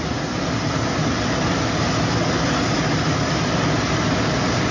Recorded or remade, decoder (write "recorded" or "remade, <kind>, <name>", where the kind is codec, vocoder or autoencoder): recorded